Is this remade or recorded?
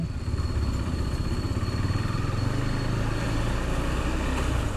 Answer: recorded